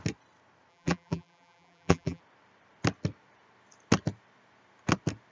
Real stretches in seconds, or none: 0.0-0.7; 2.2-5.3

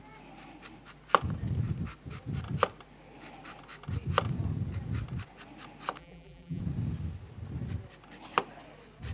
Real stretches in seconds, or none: 0.0-6.0; 6.6-9.1